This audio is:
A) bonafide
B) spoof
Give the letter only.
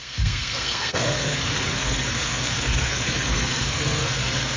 B